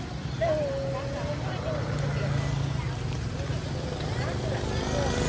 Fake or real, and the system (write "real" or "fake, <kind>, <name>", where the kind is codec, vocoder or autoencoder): real